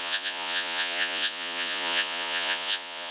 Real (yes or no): no